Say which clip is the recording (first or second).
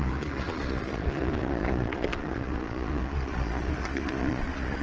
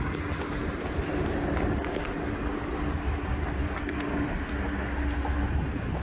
second